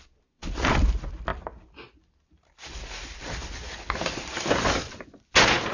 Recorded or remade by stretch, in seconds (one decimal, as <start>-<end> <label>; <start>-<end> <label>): 0.0-5.7 recorded